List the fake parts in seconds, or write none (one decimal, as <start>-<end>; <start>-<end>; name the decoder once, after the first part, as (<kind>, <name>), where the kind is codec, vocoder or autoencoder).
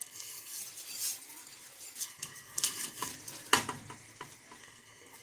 0.0-0.6 (codec, SNAC); 2.0-3.1; 4.6-5.2